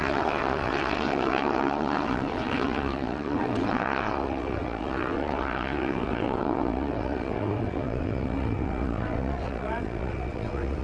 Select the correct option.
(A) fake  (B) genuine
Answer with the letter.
A